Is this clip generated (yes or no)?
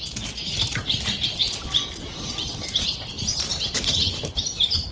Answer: no